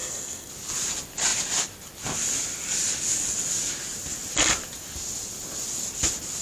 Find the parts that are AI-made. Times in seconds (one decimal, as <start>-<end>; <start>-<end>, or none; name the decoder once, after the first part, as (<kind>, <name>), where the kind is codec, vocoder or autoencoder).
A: 0.0-0.5 (codec, SNAC)